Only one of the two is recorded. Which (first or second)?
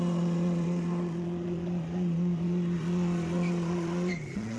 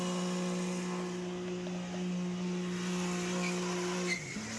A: second